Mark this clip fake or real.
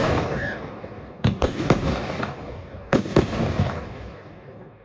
fake